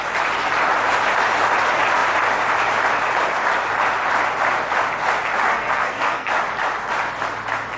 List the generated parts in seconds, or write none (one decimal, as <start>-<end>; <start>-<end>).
5.5-6.3